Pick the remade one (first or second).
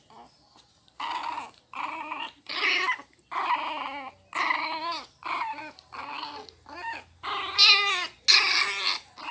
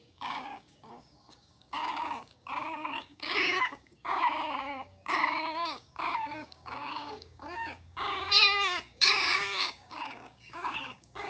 second